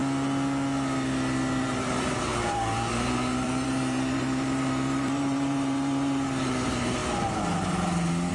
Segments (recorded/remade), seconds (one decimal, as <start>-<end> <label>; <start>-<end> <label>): 0.0-1.6 recorded; 1.6-7.0 remade; 7.0-8.3 recorded